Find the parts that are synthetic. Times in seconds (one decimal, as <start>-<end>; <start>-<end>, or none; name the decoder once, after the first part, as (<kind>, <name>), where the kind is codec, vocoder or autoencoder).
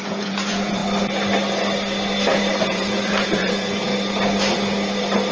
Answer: 0.0-0.8 (vocoder, Vocos); 2.6-3.9